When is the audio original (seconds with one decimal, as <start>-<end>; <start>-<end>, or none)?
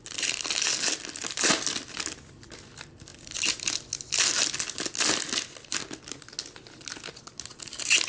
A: 0.0-8.1